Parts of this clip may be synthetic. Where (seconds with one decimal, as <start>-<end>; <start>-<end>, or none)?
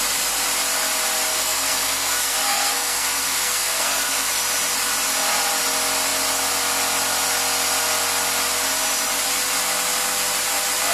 1.3-4.3